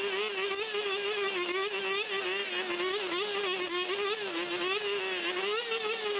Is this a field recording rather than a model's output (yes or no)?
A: yes